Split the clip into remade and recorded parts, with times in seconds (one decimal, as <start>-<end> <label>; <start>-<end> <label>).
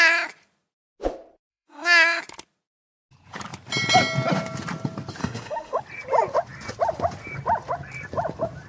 0.0-1.5 recorded; 1.5-2.2 remade; 2.2-5.2 recorded; 5.2-5.8 remade; 5.8-8.7 recorded